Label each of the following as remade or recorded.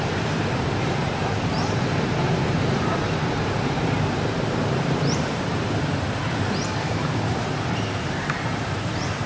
remade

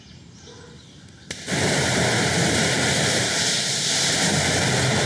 remade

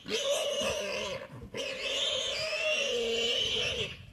recorded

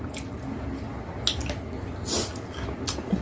recorded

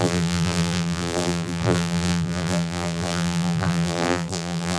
remade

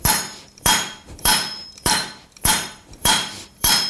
remade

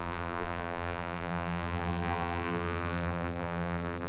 remade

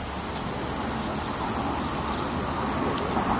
recorded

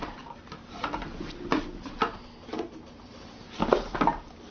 remade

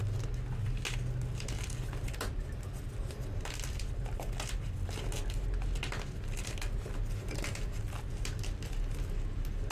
recorded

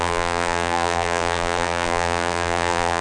remade